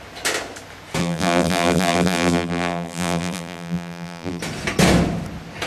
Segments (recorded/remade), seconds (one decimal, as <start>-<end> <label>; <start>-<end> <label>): 0.0-1.0 recorded; 1.0-4.4 remade; 4.4-5.7 recorded